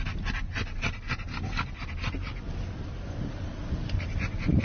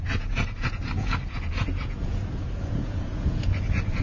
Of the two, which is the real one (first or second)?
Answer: first